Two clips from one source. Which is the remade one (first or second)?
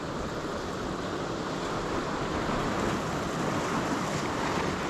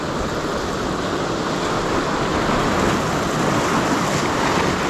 first